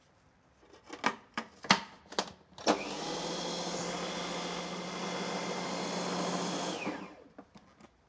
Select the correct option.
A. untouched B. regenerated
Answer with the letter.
A